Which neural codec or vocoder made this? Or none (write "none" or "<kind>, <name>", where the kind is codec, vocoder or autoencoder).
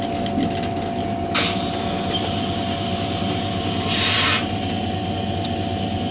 none